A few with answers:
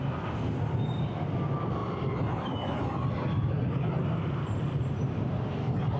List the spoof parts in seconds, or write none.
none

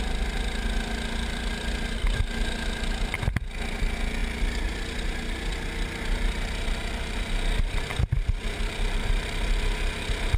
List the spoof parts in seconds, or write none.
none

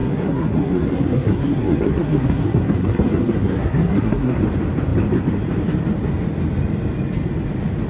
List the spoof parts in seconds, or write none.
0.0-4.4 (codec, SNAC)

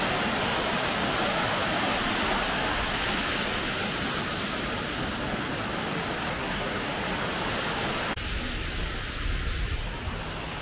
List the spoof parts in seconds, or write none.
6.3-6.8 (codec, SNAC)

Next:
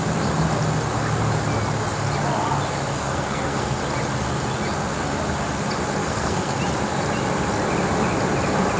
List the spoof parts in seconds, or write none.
3.0-3.8 (codec, SNAC); 6.0-6.6

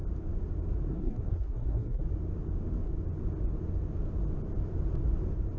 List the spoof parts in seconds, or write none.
0.9-2.0 (codec, SNAC)

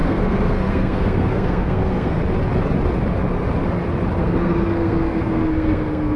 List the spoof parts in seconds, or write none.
0.0-2.2 (codec, SNAC); 4.2-6.2

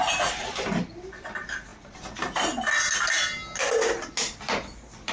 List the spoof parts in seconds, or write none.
none